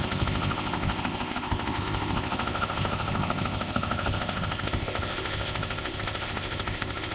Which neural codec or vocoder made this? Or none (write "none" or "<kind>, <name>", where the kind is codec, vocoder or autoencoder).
codec, ZipCodec